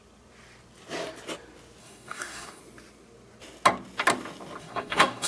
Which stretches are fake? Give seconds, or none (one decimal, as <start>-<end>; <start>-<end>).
1.8-2.6; 4.6-5.3